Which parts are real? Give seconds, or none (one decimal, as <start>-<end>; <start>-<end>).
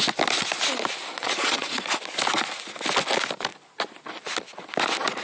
0.0-1.2; 2.0-5.2